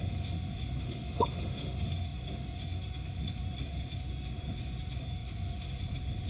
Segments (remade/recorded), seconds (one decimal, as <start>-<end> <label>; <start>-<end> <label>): 0.0-6.3 remade